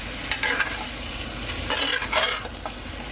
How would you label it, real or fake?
real